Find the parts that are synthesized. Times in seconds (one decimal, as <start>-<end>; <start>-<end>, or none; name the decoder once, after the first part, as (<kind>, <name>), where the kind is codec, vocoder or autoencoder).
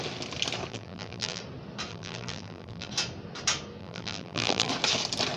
0.7-1.4 (vocoder, BigVGAN v2); 1.9-2.9; 3.8-4.7